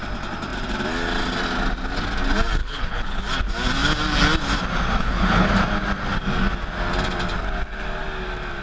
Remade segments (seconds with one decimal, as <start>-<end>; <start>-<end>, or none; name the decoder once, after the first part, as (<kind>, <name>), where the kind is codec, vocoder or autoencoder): 2.6-3.2 (codec, HILCodec); 5.0-5.5